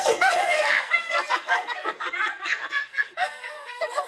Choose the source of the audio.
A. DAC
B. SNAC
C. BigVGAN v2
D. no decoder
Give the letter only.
B